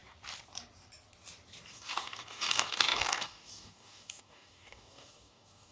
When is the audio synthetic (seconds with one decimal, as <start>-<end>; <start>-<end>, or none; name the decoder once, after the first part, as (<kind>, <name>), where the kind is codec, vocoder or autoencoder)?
1.7-5.7 (codec, DAC)